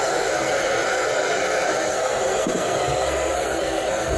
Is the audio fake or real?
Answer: fake